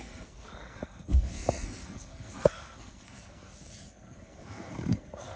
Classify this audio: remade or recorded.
remade